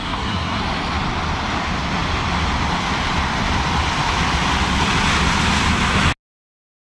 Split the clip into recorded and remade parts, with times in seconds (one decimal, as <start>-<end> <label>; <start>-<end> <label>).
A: 0.0-0.6 remade; 0.6-6.8 recorded